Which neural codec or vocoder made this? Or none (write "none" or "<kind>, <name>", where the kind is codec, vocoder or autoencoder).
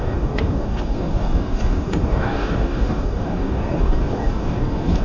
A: codec, DAC